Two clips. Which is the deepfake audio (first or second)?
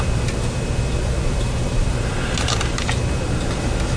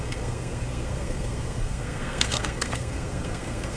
second